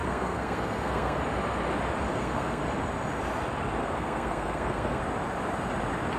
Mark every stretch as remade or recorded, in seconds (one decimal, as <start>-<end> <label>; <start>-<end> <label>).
0.0-1.2 remade; 1.2-2.1 recorded; 2.1-2.6 remade; 2.6-3.8 recorded; 3.8-5.0 remade; 5.0-6.2 recorded